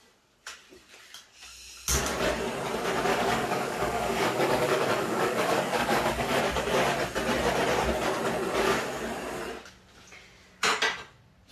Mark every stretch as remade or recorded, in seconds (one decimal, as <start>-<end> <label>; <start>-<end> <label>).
0.0-3.1 recorded; 3.1-6.4 remade; 6.4-11.5 recorded